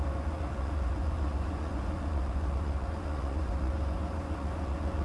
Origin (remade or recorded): remade